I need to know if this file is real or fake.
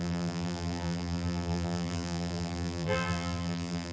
fake